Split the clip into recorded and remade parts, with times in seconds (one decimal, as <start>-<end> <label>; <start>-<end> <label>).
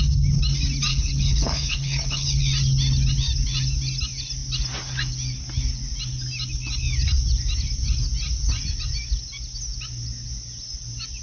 0.0-0.9 recorded; 0.9-2.4 remade; 2.4-11.2 recorded